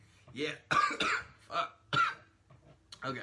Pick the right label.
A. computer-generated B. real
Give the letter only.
B